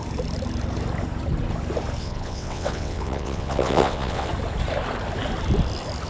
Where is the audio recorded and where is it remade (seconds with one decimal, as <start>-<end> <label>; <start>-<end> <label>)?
0.0-2.0 recorded; 2.0-4.3 remade; 4.3-6.1 recorded